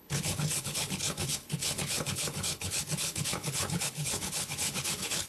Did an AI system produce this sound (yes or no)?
yes